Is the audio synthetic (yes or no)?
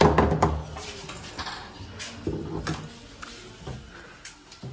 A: no